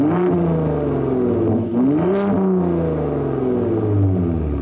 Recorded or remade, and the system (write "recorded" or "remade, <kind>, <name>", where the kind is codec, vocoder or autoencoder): recorded